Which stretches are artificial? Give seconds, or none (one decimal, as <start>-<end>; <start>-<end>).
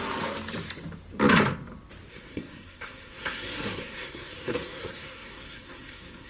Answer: 2.1-6.3